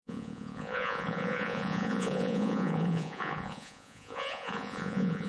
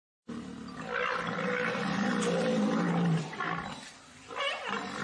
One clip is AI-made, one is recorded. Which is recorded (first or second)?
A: second